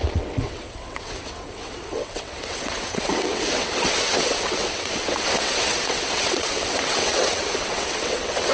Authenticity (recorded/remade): remade